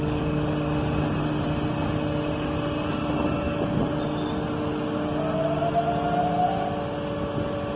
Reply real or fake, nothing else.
real